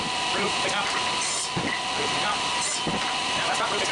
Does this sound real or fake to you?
real